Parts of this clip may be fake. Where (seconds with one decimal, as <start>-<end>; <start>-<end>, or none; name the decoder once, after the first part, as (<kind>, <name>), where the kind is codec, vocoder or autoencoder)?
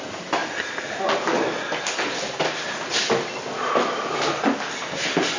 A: none